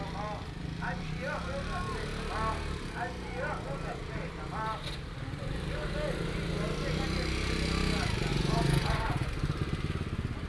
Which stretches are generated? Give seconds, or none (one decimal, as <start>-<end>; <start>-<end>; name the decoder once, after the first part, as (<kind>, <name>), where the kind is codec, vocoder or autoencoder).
8.3-9.3 (vocoder, Vocos)